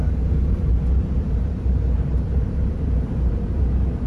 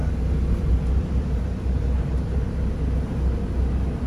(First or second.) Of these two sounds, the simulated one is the first